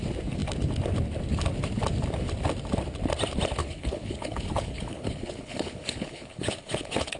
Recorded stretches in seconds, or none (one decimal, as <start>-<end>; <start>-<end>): 0.0-3.6